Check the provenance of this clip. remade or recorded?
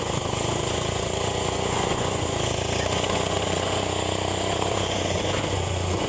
remade